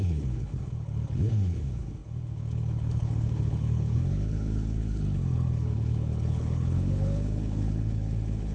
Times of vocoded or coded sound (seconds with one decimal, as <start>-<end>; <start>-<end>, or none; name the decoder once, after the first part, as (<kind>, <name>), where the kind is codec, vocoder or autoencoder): 0.0-8.5 (codec, HILCodec)